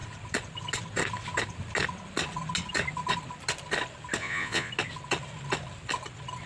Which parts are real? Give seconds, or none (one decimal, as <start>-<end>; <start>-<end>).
0.0-4.2; 4.7-6.5